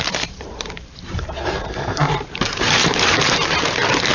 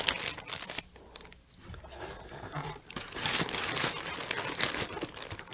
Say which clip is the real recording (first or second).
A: second